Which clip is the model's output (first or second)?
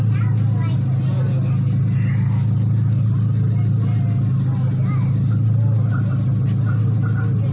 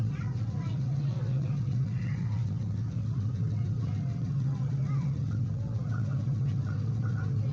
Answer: second